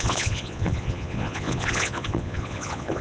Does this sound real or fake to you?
fake